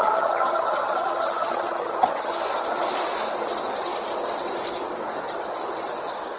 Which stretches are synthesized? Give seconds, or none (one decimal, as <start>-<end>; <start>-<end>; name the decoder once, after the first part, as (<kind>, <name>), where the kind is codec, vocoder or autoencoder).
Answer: 0.0-2.4 (vocoder, HiFi-GAN)